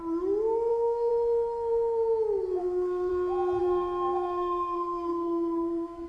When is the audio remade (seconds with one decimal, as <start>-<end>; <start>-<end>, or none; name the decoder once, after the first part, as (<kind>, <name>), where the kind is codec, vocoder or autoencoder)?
0.7-1.1 (codec, SNAC); 2.6-3.1; 3.6-6.1